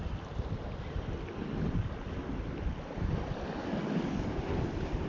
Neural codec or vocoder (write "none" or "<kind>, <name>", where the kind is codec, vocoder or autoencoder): none